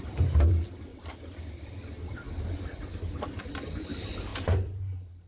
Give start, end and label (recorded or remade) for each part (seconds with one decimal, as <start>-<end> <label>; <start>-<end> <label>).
0.0-0.9 remade; 0.9-3.1 recorded; 3.1-5.3 remade